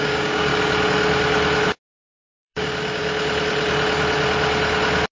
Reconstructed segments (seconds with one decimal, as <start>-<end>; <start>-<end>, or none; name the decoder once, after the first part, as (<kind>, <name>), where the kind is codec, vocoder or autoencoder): 0.0-0.5 (codec, DAC); 1.9-3.0